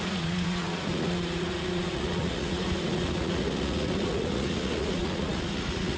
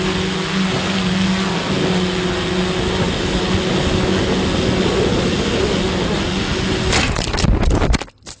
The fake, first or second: first